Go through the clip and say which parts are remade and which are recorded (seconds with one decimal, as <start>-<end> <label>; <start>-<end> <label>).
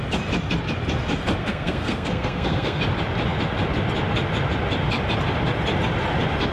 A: 0.0-1.4 recorded; 1.4-2.8 remade; 2.8-6.5 recorded